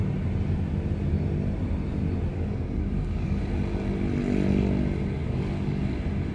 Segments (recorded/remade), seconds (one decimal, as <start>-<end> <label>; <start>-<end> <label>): 0.0-2.3 recorded; 2.3-3.4 remade; 3.4-5.2 recorded; 5.2-5.8 remade; 5.8-6.3 recorded